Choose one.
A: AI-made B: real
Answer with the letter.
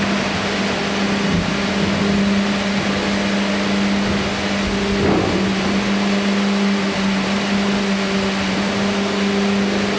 B